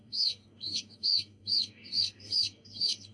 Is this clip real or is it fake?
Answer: fake